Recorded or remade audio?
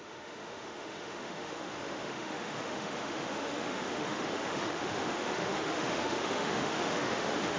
remade